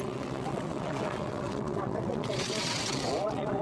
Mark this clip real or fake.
fake